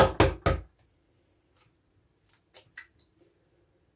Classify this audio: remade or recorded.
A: recorded